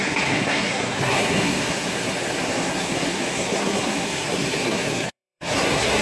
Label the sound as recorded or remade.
remade